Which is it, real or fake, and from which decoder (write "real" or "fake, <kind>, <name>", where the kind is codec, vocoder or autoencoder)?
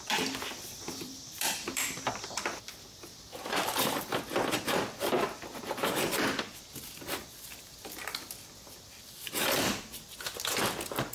fake, vocoder, BigVGAN v2